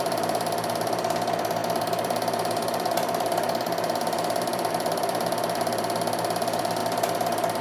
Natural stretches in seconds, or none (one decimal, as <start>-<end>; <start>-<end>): none